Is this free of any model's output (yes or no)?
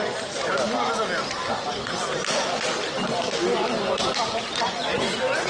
yes